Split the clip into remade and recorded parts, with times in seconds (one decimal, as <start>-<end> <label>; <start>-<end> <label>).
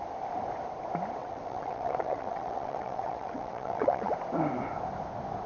0.0-1.2 recorded; 1.2-4.1 remade; 4.1-5.5 recorded